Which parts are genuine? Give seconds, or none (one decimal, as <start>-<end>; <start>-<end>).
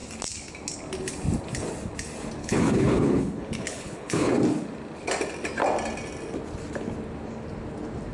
0.0-2.4; 4.3-8.1